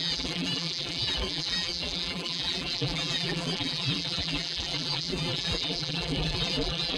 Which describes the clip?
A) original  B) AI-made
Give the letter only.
B